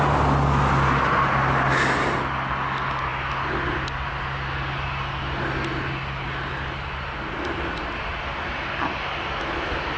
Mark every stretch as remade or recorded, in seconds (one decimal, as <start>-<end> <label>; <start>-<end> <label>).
0.0-10.0 recorded